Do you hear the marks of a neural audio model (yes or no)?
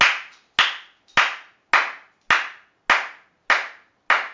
no